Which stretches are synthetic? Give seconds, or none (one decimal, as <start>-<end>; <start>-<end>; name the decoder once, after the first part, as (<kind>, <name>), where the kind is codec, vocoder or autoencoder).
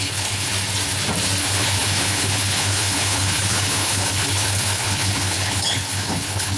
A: 0.0-0.5 (codec, HILCodec); 1.4-6.6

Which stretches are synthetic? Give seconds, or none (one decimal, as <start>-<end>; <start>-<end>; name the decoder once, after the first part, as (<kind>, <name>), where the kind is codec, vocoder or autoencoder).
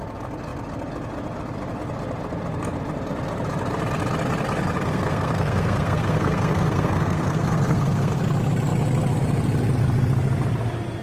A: 4.8-8.2 (codec, SNAC)